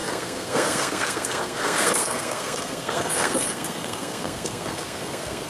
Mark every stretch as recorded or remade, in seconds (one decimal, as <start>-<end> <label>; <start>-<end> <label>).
0.0-5.5 remade